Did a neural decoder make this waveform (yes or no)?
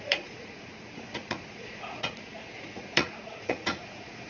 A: yes